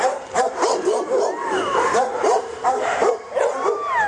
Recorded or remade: remade